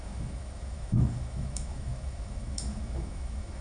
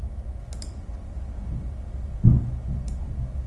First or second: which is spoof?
first